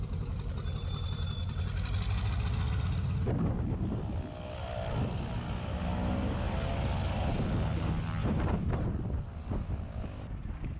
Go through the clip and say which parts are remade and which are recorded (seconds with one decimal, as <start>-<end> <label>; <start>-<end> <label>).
0.0-8.2 recorded; 8.2-8.7 remade; 8.7-10.8 recorded